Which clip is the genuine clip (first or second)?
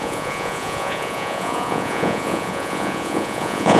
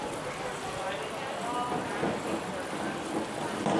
second